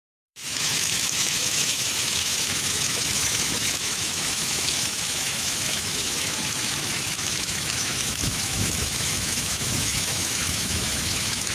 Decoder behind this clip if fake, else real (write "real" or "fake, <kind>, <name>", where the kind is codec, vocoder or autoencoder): fake, autoencoder, DAC-VAE